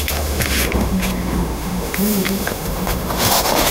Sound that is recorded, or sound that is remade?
remade